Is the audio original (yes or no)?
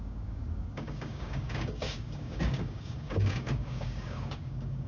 no